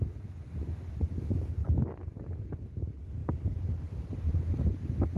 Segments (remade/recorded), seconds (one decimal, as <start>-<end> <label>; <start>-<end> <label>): 0.0-3.2 recorded; 3.2-3.8 remade; 3.8-5.2 recorded